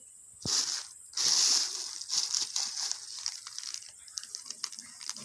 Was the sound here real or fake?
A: real